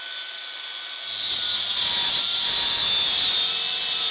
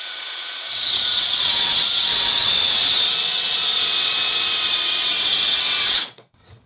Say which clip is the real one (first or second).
first